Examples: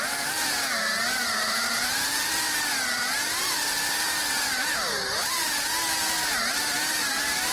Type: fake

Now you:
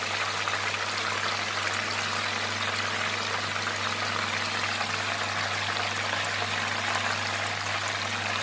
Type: real